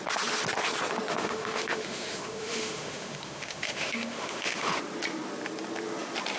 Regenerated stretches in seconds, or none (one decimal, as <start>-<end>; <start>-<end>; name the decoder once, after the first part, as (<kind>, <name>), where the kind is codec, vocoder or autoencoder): 1.1-4.8 (autoencoder, DAC-VAE)